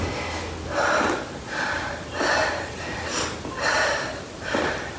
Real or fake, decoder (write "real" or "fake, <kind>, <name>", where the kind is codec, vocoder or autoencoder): real